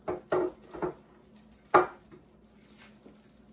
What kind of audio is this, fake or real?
real